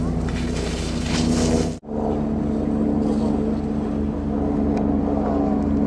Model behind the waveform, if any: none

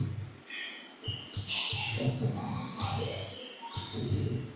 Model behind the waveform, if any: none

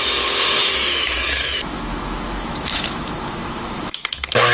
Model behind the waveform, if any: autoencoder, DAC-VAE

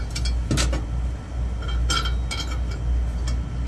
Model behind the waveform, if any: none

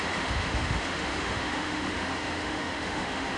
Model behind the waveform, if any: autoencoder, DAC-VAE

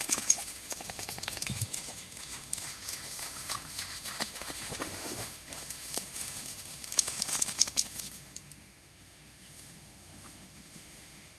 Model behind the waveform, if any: autoencoder, DAC-VAE